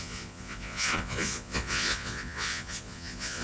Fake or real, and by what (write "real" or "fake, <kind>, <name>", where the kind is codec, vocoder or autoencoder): fake, vocoder, Vocos